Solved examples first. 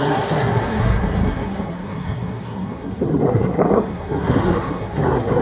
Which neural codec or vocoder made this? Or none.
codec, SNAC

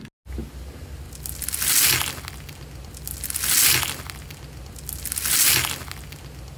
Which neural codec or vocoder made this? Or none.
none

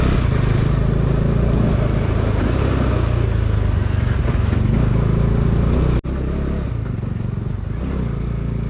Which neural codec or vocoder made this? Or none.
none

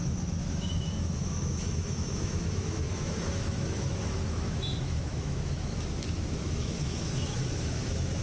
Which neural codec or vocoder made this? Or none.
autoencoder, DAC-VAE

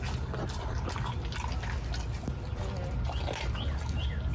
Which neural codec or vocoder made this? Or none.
none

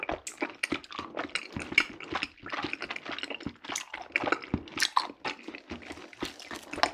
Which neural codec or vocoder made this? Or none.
none